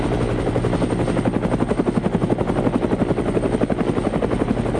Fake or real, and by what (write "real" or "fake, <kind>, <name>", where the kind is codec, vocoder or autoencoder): real